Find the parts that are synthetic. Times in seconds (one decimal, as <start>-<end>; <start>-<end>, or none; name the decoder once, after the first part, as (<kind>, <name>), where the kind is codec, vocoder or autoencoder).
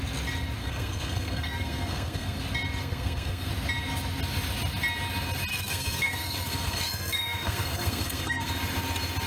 0.6-2.4 (codec, SNAC); 2.8-3.5; 5.5-8.5